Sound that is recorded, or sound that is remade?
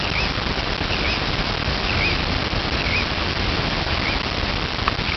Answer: recorded